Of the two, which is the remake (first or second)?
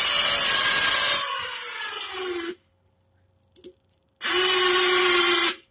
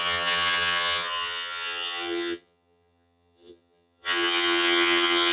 second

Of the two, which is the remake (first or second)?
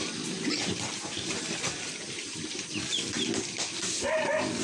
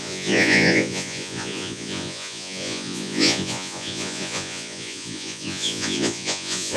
second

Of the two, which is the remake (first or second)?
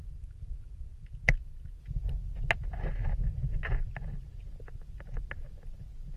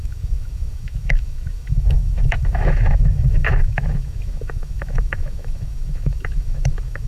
second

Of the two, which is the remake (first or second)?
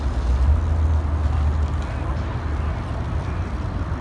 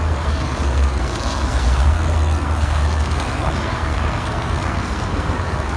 second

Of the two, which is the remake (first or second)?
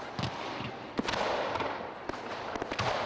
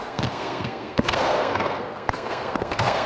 second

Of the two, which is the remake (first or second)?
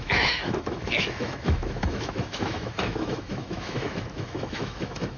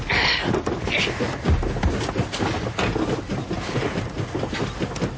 first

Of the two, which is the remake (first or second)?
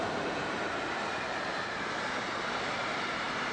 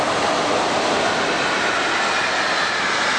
first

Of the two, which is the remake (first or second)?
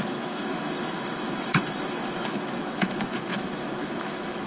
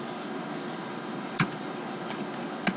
first